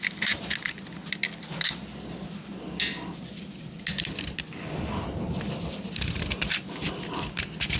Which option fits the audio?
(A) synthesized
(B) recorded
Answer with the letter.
B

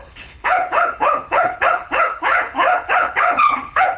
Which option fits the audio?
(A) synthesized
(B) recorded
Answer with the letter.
A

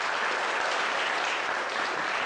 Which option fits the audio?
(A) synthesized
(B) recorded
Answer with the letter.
B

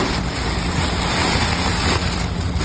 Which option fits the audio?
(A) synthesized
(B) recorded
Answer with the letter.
B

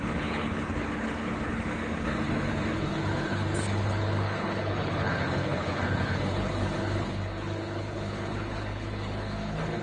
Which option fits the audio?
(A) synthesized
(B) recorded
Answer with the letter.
A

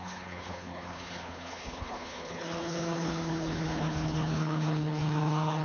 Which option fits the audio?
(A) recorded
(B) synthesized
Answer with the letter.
B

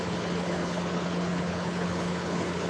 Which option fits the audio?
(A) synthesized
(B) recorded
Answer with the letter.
A